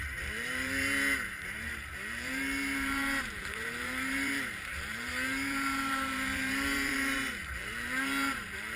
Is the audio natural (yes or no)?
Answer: no